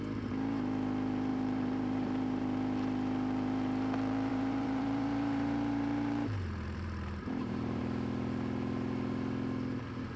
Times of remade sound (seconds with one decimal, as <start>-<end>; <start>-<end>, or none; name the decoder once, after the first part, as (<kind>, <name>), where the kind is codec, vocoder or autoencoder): 1.3-2.4 (vocoder, BigVGAN v2); 4.3-7.8